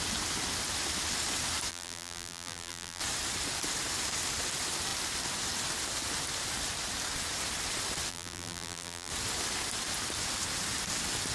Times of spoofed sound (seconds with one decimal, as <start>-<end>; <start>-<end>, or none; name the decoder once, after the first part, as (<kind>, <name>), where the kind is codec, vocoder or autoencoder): 1.7-3.0 (vocoder, BigVGAN v2); 8.1-9.1